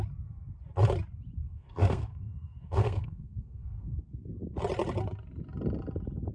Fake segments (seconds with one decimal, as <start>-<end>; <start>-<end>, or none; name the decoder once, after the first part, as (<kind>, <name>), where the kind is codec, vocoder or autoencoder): 1.4-4.0 (codec, SNAC)